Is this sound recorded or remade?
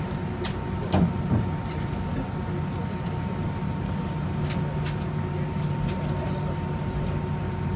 recorded